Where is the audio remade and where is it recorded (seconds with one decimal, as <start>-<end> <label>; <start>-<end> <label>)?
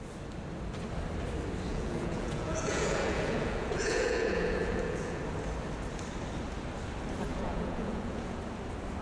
0.0-1.7 recorded; 1.7-5.2 remade; 5.2-7.3 recorded; 7.3-8.4 remade; 8.4-9.0 recorded